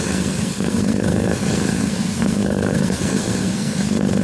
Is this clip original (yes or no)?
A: no